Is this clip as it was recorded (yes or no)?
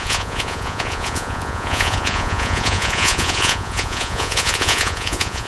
no